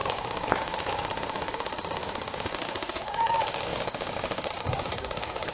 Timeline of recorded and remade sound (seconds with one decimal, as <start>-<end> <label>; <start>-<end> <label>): 0.0-5.5 remade